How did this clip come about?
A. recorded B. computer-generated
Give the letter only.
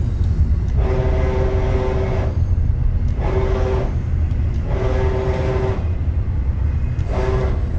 A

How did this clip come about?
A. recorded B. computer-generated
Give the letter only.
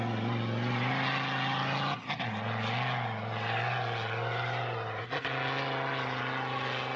A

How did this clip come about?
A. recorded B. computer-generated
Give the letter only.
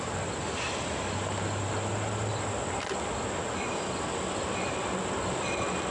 A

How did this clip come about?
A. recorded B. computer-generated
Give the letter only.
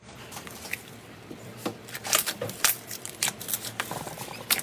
B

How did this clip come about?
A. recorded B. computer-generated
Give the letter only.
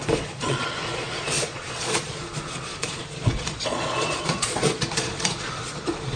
B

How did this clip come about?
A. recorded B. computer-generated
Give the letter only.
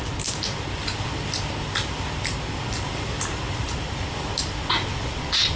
A